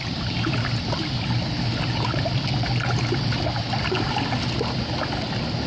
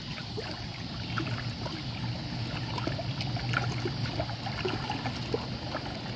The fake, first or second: first